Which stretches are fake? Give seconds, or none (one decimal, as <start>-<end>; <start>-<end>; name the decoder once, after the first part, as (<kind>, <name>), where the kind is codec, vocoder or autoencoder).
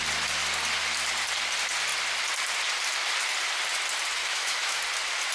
4.2-4.8 (autoencoder, DAC-VAE)